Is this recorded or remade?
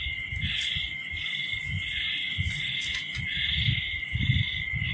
recorded